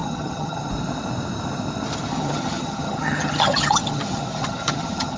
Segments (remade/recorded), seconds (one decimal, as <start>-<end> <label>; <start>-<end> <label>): 0.0-0.7 remade; 0.7-2.1 recorded; 2.1-5.2 remade